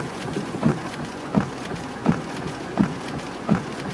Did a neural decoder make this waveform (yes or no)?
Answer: yes